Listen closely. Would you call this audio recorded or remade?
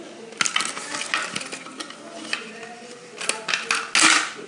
recorded